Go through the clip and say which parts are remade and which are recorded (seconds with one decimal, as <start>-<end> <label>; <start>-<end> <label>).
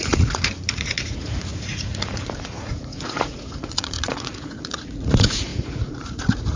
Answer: 0.0-6.6 remade